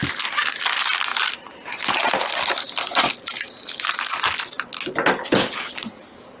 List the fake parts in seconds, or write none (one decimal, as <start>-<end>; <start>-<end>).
5.2-6.0